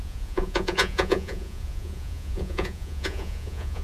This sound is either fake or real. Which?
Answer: fake